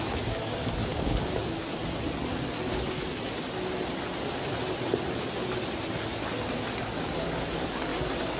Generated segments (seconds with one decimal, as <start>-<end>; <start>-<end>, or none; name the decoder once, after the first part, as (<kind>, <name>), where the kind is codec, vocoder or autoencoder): 0.0-1.8 (codec, DAC); 6.8-7.9